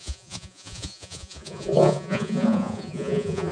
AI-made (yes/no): yes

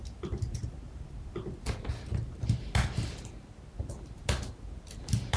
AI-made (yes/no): no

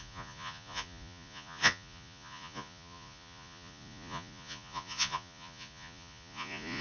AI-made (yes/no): yes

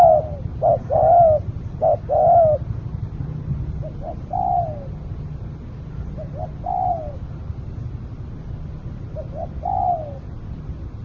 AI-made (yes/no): no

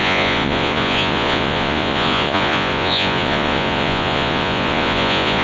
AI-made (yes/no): yes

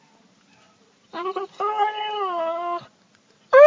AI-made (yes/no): no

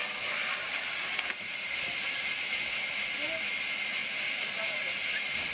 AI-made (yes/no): no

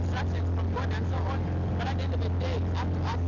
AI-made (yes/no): no